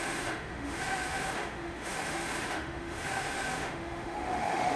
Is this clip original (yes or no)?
no